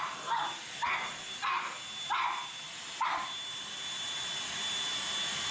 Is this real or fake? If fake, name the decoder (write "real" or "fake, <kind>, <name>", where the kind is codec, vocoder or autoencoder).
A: real